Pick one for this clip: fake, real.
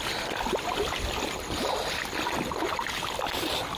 real